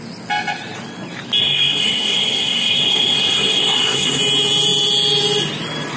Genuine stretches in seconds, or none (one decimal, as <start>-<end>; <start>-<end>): 0.0-1.4; 4.2-6.0